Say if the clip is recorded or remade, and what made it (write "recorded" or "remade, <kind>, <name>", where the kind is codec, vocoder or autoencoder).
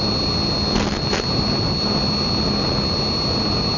recorded